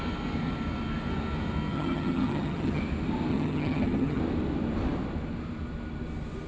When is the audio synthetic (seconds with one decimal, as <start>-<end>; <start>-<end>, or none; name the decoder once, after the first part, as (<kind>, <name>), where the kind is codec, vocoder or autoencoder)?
1.7-2.8 (vocoder, HiFi-GAN); 3.3-4.2